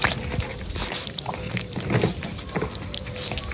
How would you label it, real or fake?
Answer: real